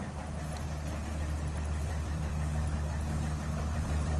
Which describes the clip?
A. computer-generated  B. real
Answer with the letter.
A